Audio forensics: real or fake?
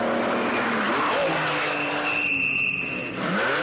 real